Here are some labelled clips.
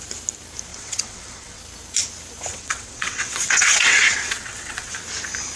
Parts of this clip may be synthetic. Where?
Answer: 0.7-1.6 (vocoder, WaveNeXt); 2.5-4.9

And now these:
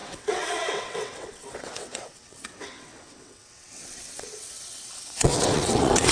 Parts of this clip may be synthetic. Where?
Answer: 0.0-6.1 (vocoder, WaveNeXt)

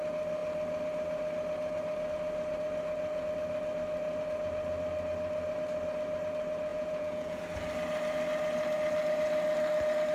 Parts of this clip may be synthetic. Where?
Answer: 6.7-7.4 (vocoder, Vocos)

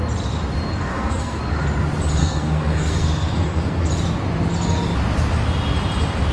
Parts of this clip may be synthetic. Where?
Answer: 0.9-1.4 (codec, SNAC); 2.2-3.9

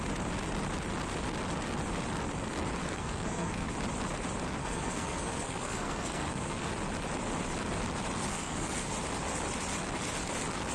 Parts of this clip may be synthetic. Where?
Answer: 2.8-3.7 (codec, SNAC); 4.6-6.7; 8.3-8.9

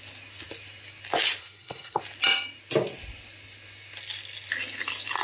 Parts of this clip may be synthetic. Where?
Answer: 1.4-2.0 (codec, SNAC)

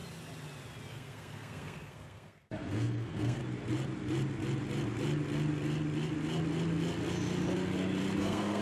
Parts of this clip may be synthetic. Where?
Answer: 0.9-3.4 (codec, SNAC); 8.2-8.6